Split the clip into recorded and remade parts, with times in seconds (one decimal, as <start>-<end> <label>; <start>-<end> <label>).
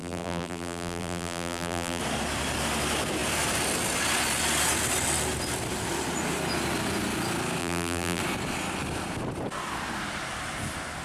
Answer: 0.0-2.0 remade; 2.0-7.6 recorded; 7.6-8.2 remade; 8.2-11.0 recorded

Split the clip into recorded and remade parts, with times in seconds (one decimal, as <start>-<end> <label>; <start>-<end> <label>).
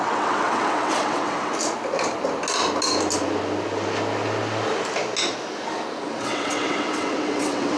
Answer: 0.0-1.5 remade; 1.5-6.2 recorded; 6.2-7.8 remade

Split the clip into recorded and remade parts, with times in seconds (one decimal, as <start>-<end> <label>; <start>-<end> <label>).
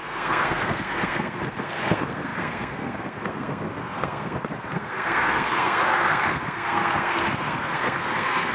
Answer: 0.0-8.5 remade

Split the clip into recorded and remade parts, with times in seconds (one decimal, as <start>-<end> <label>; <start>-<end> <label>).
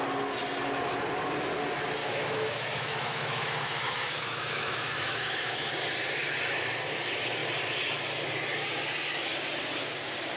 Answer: 0.0-2.0 recorded; 2.0-5.8 remade; 5.8-10.4 recorded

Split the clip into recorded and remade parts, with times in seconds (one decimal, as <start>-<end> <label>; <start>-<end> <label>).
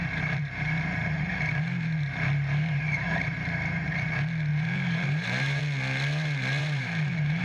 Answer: 0.0-4.1 remade; 4.1-4.5 recorded; 4.5-5.6 remade; 5.6-6.6 recorded; 6.6-7.4 remade